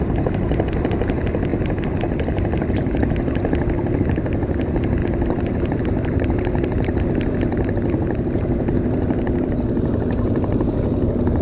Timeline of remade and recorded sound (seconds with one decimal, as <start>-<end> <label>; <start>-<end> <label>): 0.0-5.0 recorded; 5.0-7.0 remade; 7.0-7.5 recorded; 7.5-11.4 remade